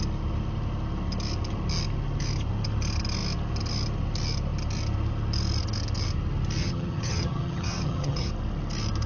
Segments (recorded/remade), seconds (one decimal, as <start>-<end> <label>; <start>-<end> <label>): 0.0-6.6 recorded; 6.6-8.3 remade; 8.3-9.1 recorded